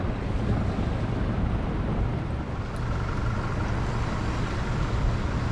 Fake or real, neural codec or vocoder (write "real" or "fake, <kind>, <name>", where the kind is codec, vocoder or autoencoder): real